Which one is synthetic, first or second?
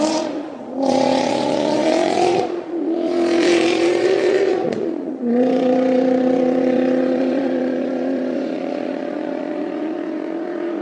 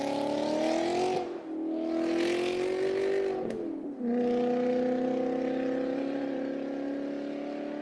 first